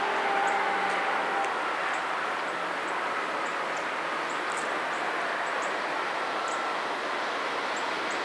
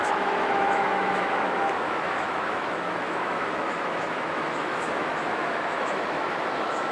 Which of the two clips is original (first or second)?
first